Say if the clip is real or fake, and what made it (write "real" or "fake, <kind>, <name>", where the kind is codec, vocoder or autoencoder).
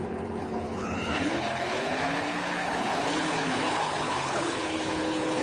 fake, codec, HILCodec